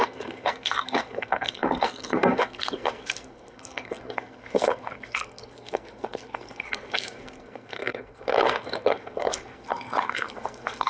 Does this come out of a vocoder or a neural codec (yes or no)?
yes